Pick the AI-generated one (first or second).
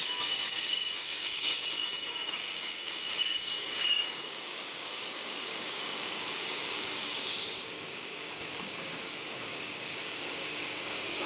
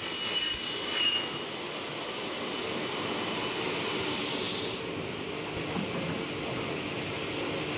first